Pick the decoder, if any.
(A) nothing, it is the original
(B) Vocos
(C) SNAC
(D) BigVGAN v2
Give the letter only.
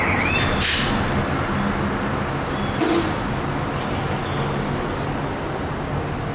A